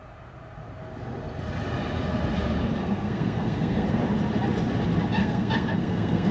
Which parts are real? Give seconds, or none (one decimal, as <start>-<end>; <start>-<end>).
0.0-2.8; 4.0-5.2